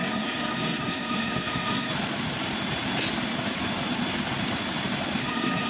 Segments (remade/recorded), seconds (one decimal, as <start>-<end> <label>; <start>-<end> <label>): 0.0-1.9 remade; 1.9-5.2 recorded; 5.2-5.7 remade